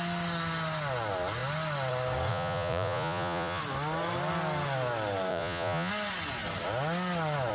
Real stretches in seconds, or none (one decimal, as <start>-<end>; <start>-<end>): 0.0-2.3; 3.6-5.3; 5.9-7.5